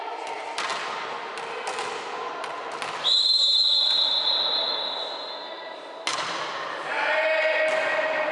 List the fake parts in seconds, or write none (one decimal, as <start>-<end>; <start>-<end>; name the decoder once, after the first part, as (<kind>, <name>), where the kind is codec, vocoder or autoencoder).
none